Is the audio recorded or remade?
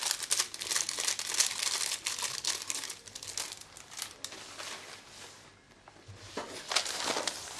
recorded